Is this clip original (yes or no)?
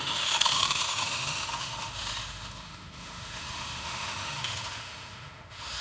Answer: no